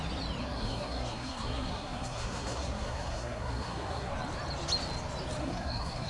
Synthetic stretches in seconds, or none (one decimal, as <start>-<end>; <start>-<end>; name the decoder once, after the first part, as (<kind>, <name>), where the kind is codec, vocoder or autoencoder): 0.4-4.1 (codec, SNAC); 5.4-6.1